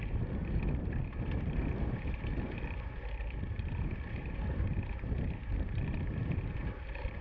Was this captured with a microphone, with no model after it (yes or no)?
no